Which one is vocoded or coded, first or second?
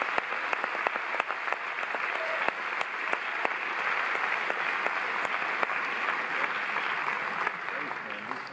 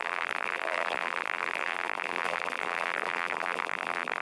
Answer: second